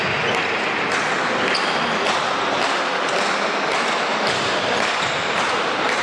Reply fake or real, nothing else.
real